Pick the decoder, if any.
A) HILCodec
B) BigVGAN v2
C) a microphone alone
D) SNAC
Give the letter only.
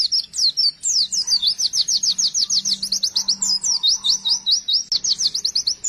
C